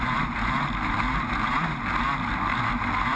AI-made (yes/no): no